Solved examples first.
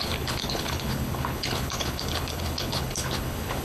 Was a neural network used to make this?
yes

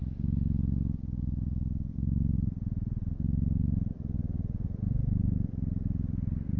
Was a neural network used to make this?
yes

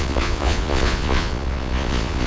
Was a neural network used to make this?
yes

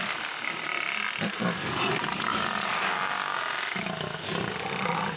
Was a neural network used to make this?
no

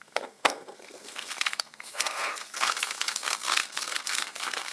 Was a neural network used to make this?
yes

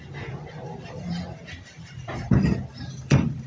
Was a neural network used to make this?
yes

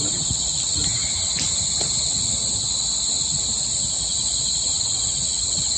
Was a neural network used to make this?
no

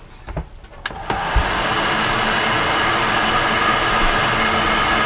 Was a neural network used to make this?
no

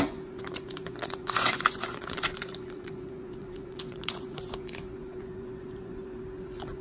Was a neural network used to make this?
yes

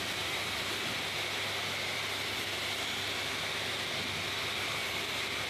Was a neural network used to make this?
no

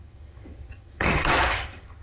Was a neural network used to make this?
yes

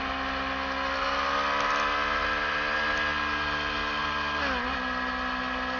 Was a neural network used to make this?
no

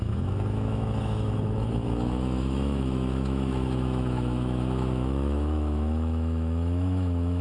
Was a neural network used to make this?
yes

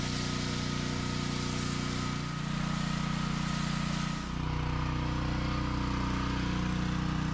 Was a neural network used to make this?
no